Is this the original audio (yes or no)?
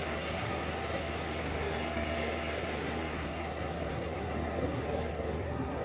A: no